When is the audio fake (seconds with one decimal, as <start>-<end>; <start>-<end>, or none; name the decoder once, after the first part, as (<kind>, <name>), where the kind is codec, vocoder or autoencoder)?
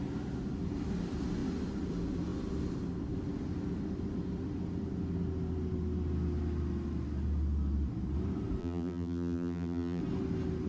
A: 8.6-10.0 (vocoder, BigVGAN v2)